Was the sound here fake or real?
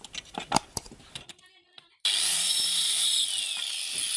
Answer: real